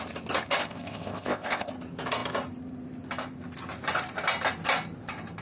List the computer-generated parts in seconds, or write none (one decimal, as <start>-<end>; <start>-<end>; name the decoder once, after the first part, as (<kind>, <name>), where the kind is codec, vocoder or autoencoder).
0.6-1.7 (codec, ZipCodec)